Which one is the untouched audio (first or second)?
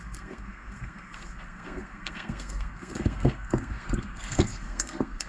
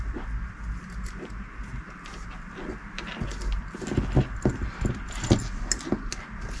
second